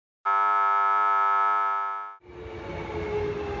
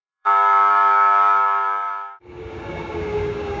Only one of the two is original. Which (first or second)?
first